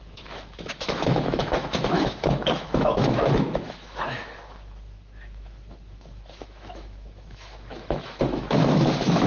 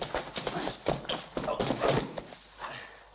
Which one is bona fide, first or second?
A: second